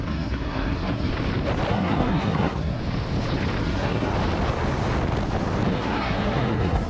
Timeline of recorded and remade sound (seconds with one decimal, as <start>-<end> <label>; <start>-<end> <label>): 0.0-1.1 remade; 1.1-1.7 recorded; 1.7-2.8 remade; 2.8-3.6 recorded; 3.6-4.1 remade; 4.1-5.7 recorded; 5.7-6.9 remade